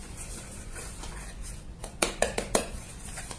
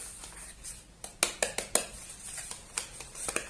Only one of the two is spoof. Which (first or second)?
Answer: first